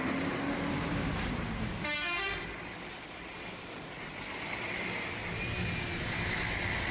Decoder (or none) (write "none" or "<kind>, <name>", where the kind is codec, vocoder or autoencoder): none